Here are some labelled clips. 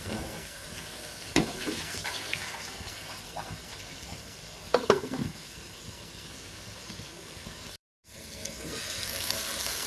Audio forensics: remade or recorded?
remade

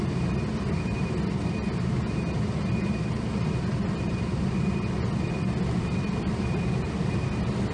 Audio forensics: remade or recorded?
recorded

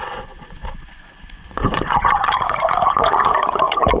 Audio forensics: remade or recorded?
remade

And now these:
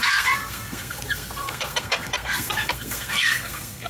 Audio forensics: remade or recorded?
remade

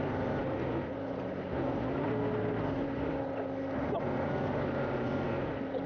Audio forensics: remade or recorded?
recorded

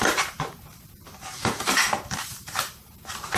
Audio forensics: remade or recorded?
remade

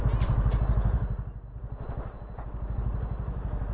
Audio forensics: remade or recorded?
recorded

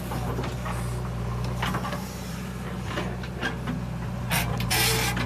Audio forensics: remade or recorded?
recorded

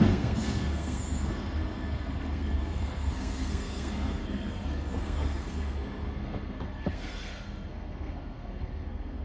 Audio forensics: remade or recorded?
remade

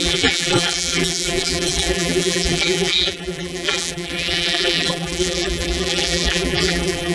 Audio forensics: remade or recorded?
remade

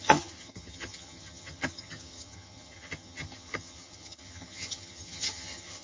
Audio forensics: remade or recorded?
remade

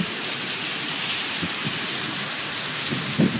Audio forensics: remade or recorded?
remade